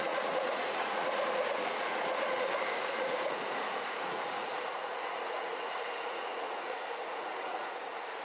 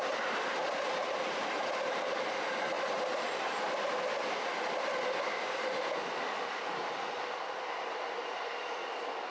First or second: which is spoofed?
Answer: first